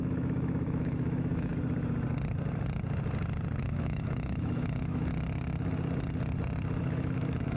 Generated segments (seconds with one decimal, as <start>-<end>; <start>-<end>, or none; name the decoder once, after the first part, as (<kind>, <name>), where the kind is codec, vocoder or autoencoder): 0.0-1.5 (autoencoder, DAC-VAE); 3.6-5.1; 6.8-7.6